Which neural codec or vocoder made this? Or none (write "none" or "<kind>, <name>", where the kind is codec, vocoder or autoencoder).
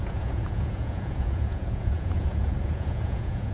vocoder, Vocos